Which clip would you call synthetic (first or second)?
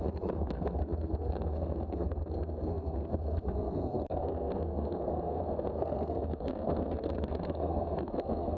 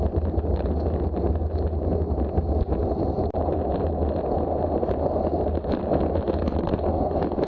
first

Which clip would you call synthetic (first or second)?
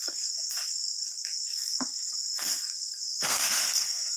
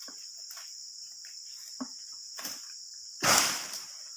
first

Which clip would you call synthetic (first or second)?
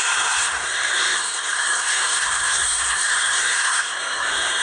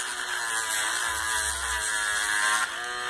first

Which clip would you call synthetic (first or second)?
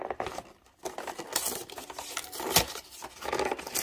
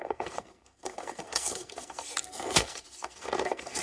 second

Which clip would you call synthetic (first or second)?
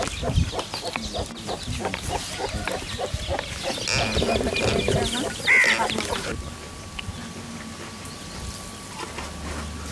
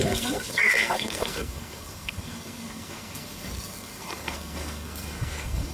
second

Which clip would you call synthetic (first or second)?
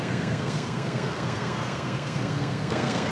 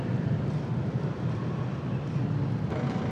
first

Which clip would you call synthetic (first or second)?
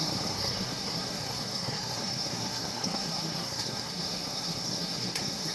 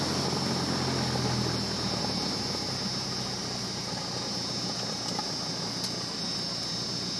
first